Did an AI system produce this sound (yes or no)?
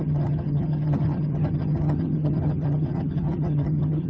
yes